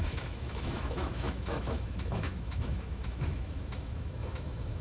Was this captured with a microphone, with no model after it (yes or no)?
no